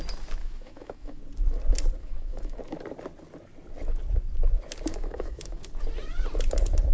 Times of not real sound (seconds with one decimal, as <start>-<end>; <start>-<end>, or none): 0.4-1.2; 2.0-2.6; 4.9-5.6